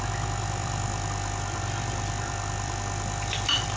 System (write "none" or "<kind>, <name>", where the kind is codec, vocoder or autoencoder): vocoder, BigVGAN v2